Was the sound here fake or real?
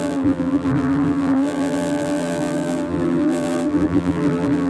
fake